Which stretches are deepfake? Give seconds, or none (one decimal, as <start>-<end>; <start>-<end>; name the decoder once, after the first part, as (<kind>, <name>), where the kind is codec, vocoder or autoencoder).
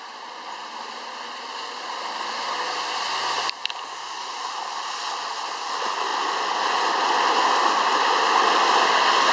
none